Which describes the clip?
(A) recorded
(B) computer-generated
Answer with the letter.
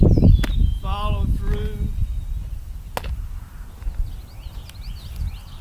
A